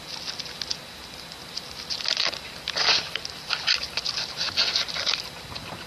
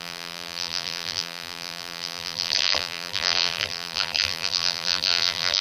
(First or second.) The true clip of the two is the first